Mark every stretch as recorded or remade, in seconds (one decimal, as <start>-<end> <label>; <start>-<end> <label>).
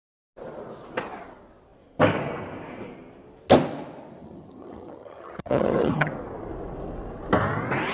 0.0-4.2 recorded; 4.2-6.1 remade; 6.1-7.9 recorded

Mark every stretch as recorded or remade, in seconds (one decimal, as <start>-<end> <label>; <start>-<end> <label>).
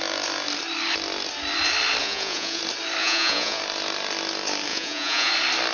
0.0-2.0 recorded; 2.0-2.6 remade; 2.6-3.0 recorded; 3.0-3.6 remade; 3.6-4.7 recorded; 4.7-5.3 remade; 5.3-5.7 recorded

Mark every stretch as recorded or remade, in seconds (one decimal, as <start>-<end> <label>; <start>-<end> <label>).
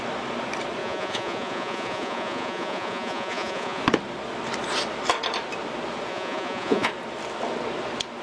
0.0-0.8 recorded; 0.8-3.8 remade; 3.8-6.1 recorded; 6.1-6.9 remade; 6.9-8.2 recorded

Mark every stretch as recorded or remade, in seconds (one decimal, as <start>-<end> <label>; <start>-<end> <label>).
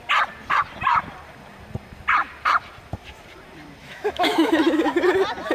0.0-3.8 recorded; 3.8-5.0 remade; 5.0-5.5 recorded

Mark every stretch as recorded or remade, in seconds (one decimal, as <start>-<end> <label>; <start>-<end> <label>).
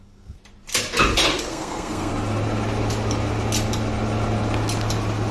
0.0-0.4 remade; 0.4-1.5 recorded; 1.5-2.1 remade; 2.1-5.3 recorded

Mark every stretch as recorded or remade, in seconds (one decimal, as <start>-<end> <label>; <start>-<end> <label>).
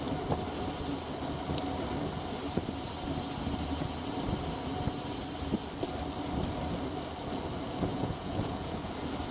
0.0-7.9 recorded; 7.9-8.9 remade; 8.9-9.3 recorded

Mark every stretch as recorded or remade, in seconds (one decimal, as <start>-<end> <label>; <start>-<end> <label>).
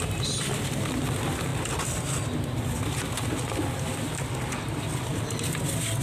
0.0-6.0 recorded